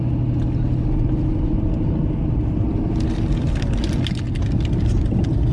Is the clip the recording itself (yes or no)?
yes